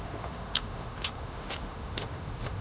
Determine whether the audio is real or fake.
fake